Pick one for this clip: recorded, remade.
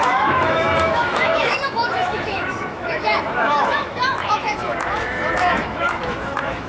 remade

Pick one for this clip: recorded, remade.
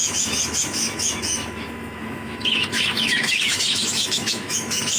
remade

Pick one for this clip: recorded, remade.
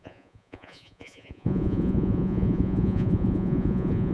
remade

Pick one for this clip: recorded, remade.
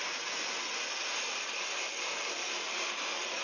recorded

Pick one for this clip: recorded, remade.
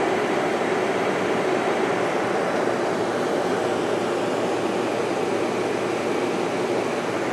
recorded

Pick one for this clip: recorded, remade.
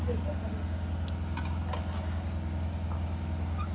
recorded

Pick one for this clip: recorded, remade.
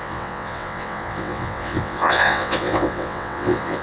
remade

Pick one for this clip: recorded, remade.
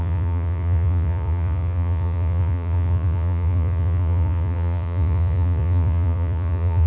remade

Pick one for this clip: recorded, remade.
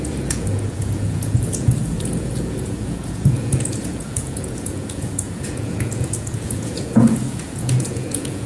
remade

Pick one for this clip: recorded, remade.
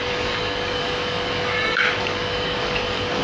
remade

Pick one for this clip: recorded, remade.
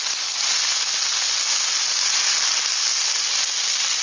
recorded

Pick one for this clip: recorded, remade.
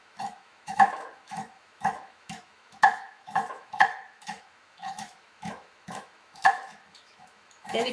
remade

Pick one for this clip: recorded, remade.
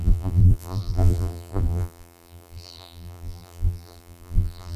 remade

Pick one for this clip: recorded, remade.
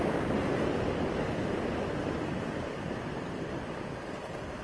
remade